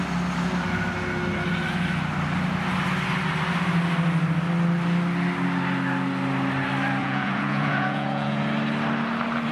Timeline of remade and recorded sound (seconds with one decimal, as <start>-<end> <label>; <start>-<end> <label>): 0.0-7.0 recorded; 7.0-8.4 remade; 8.4-9.5 recorded